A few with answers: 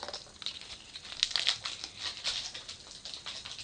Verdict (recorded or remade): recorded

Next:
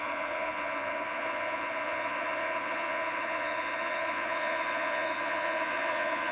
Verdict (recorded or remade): remade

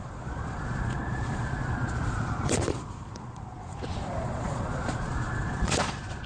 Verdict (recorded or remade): remade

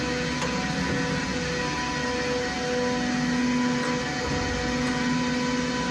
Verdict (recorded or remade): recorded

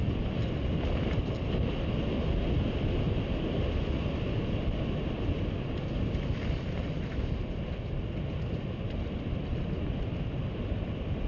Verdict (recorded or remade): recorded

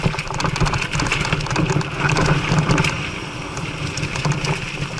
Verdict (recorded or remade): recorded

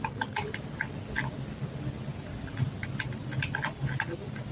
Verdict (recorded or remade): recorded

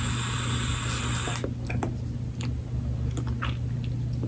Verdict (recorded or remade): recorded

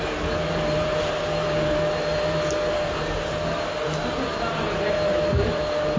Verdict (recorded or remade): remade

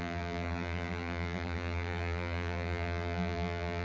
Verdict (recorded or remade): remade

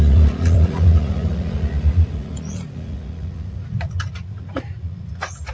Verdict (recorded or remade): remade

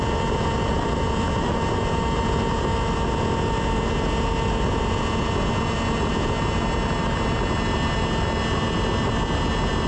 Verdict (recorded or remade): recorded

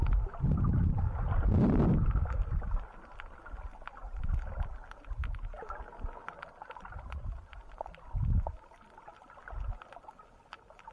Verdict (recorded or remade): recorded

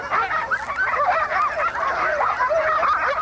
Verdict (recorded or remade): recorded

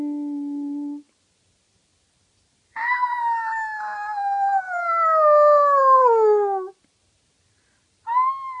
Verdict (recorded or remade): recorded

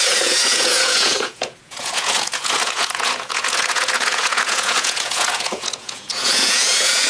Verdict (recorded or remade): remade